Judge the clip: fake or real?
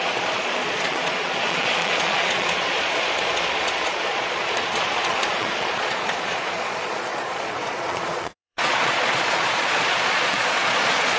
fake